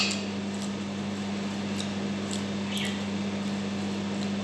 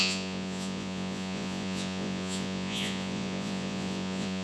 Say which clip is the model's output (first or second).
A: second